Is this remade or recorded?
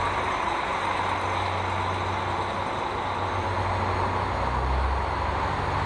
recorded